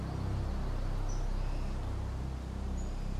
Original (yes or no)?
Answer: yes